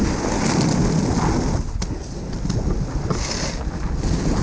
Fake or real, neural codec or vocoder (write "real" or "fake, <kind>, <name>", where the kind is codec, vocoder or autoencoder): real